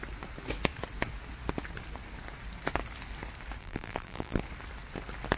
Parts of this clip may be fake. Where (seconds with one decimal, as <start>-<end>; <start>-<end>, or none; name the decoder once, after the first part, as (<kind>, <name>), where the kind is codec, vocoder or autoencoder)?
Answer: 3.6-4.4 (vocoder, BigVGAN v2)